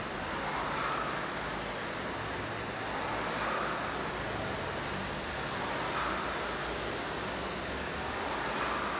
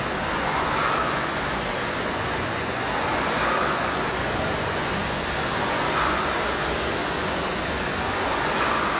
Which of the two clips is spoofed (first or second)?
second